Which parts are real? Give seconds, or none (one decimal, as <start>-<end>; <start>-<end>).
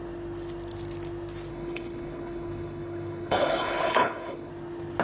0.0-1.5; 4.5-5.0